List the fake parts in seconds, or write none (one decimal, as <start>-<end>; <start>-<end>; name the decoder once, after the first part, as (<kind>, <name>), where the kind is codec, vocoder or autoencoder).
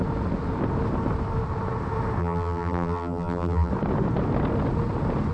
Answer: 2.2-3.7 (vocoder, BigVGAN v2)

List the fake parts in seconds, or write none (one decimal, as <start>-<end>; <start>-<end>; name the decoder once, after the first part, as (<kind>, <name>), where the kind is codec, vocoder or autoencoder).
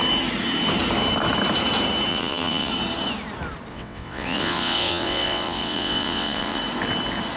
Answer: 2.1-2.7 (vocoder, WaveNeXt); 3.7-6.6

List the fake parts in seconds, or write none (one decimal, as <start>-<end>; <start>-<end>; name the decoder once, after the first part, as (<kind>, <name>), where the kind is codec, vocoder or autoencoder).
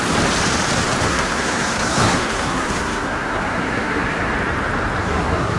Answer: 1.1-4.3 (codec, SNAC); 5.0-5.6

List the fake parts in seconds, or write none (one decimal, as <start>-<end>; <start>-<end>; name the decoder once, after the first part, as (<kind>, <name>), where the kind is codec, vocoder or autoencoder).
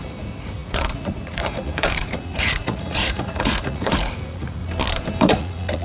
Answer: 0.0-4.6 (vocoder, Vocos); 5.2-5.8